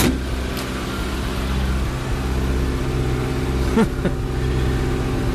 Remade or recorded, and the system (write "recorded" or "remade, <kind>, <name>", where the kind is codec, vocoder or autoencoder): recorded